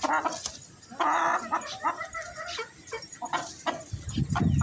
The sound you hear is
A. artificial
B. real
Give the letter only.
B